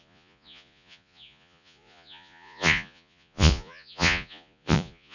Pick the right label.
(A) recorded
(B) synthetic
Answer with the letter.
B